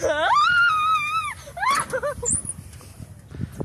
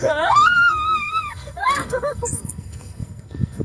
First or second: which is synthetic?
second